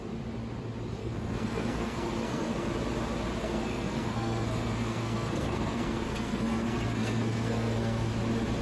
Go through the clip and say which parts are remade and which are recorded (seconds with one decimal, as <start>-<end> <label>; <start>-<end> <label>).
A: 0.0-1.0 recorded; 1.0-2.7 remade; 2.7-3.4 recorded; 3.4-8.1 remade; 8.1-8.6 recorded